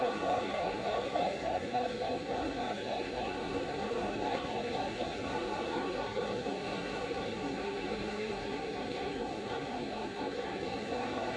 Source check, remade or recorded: remade